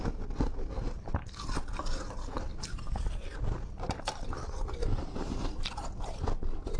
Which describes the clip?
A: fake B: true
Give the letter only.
B